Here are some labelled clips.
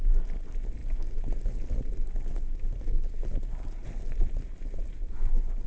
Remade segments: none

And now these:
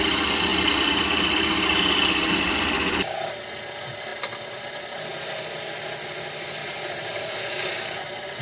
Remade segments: 6.6-8.4 (vocoder, BigVGAN v2)

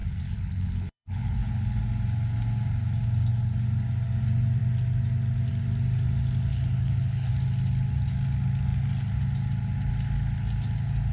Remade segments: 0.0-1.8 (codec, HILCodec); 6.5-7.3

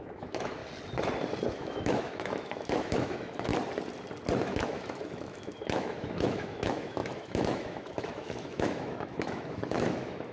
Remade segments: 0.0-0.6 (autoencoder, DAC-VAE); 1.5-3.5; 4.4-10.3

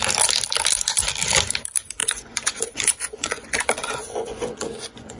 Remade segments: 2.0-5.2 (vocoder, Vocos)